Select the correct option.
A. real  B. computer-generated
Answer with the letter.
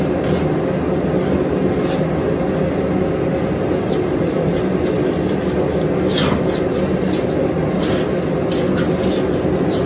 A